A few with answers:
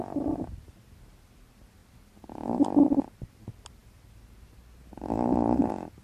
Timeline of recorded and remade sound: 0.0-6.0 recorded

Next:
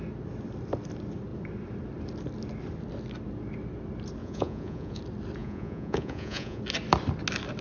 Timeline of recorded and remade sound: 0.0-4.2 recorded; 4.2-5.0 remade; 5.0-5.4 recorded; 5.4-6.6 remade; 6.6-7.6 recorded

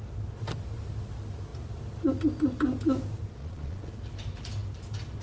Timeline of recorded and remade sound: 0.0-3.4 recorded; 3.4-3.9 remade; 3.9-5.2 recorded

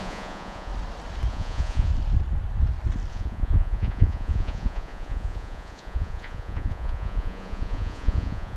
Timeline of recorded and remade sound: 0.0-0.7 remade; 0.7-1.3 recorded; 1.3-1.9 remade; 1.9-3.1 recorded; 3.1-8.6 remade

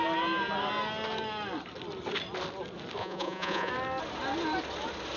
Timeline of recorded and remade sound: 0.0-3.0 recorded; 3.0-3.7 remade; 3.7-5.2 recorded

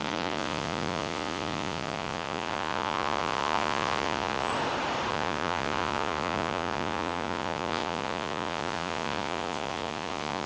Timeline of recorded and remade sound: 0.0-4.5 remade; 4.5-5.1 recorded; 5.1-10.5 remade

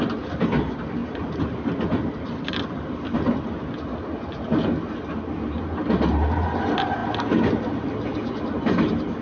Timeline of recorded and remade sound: 0.0-9.2 recorded